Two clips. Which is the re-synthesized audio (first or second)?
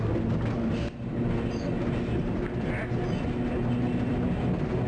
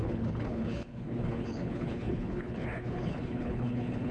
second